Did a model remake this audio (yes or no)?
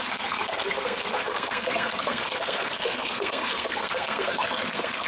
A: yes